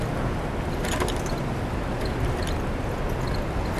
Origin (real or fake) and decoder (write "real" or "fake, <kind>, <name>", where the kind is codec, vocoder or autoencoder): real